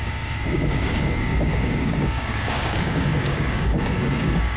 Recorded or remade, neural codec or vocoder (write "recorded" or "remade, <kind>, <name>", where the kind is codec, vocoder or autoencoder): remade, codec, DAC